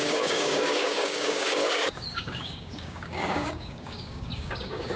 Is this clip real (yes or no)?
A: no